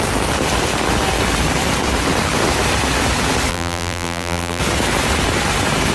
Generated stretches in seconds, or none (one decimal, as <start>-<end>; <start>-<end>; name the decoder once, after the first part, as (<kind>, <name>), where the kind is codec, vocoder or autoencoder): 3.5-4.6 (vocoder, BigVGAN v2)